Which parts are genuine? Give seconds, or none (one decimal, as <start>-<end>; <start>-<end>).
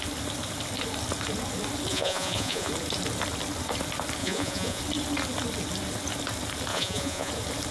0.0-1.9; 2.7-4.2; 4.8-6.7; 7.3-7.7